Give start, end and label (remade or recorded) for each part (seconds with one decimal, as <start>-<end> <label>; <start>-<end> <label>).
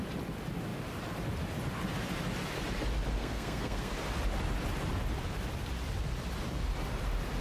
0.0-3.2 recorded; 3.2-3.9 remade; 3.9-7.4 recorded